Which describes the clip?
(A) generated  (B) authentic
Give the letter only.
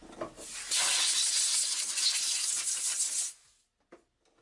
B